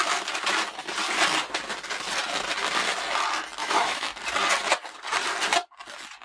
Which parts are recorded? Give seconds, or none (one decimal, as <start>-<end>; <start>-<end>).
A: 0.0-3.6; 4.2-6.2